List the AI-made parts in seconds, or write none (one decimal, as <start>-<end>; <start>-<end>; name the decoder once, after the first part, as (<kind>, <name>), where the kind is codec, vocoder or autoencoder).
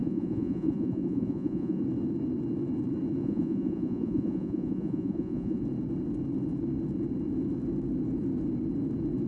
0.0-1.8 (vocoder, Vocos); 3.2-5.6